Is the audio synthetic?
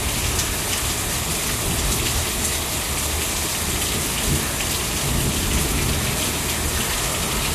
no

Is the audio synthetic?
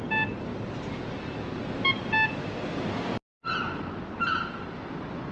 no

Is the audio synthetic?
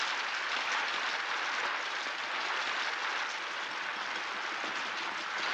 no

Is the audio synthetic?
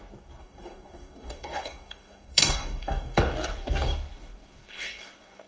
yes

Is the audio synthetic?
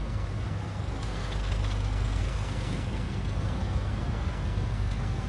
yes